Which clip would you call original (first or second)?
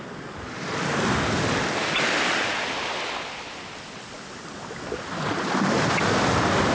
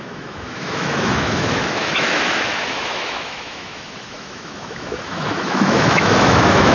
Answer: first